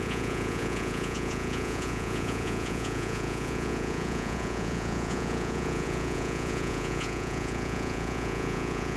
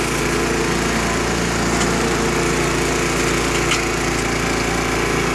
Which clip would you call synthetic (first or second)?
first